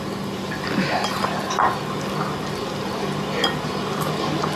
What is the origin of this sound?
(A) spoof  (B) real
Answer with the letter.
B